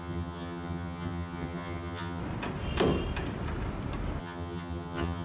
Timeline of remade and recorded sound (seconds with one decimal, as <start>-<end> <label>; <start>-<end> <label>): 0.0-2.2 remade; 2.2-4.2 recorded; 4.2-5.2 remade